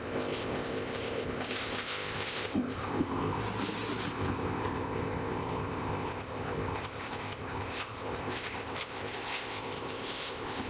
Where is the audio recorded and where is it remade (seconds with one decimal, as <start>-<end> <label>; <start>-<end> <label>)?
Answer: 0.0-3.4 remade; 3.4-4.1 recorded; 4.1-10.7 remade

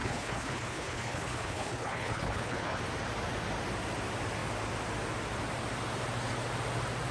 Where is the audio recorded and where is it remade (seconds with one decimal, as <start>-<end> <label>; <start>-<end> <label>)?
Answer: 0.0-2.8 remade; 2.8-7.1 recorded

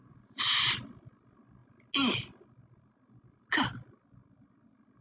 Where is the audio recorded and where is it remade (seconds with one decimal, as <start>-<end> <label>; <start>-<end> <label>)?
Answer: 0.0-0.6 remade; 0.6-5.0 recorded